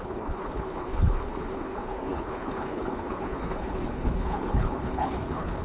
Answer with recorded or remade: remade